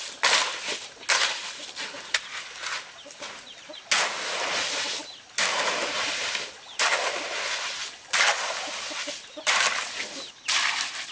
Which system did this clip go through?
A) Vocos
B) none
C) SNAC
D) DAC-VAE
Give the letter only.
B